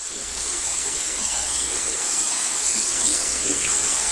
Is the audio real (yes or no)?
no